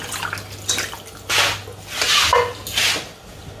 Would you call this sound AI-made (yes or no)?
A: no